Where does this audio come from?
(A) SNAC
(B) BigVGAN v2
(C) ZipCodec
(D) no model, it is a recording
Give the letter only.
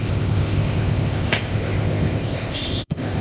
C